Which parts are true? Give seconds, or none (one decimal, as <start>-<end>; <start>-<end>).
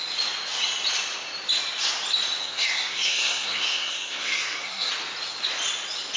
0.0-2.4; 4.9-6.2